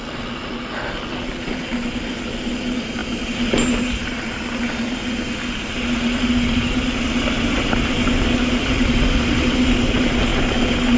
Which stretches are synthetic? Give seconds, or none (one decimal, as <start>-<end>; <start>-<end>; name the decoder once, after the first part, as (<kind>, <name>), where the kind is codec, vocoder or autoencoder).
none